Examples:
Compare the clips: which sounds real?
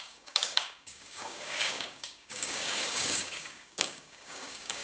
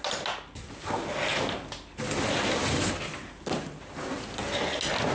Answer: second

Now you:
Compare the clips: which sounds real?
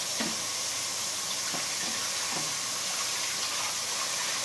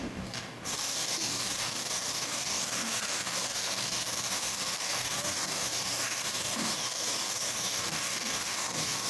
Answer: first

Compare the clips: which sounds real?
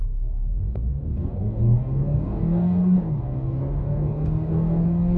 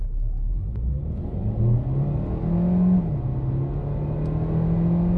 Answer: second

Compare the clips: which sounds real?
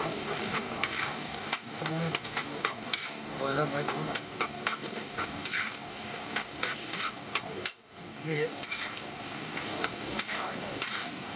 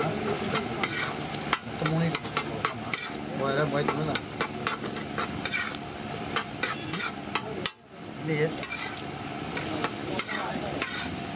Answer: second